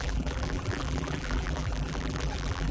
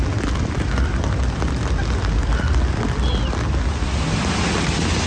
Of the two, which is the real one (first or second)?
second